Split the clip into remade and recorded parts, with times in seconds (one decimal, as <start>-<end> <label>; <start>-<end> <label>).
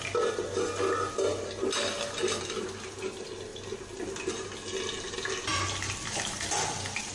0.0-7.1 recorded